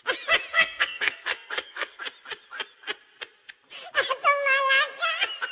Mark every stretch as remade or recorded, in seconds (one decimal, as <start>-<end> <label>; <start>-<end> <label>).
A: 0.0-0.5 recorded; 0.5-2.0 remade; 2.0-5.5 recorded